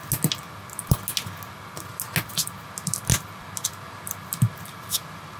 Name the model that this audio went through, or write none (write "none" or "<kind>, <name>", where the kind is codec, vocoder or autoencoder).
none